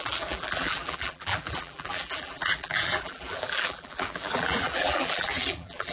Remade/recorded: remade